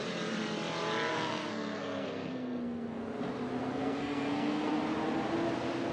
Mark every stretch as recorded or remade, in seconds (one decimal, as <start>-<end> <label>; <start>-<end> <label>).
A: 0.0-1.1 recorded; 1.1-3.0 remade; 3.0-3.6 recorded; 3.6-4.7 remade; 4.7-5.9 recorded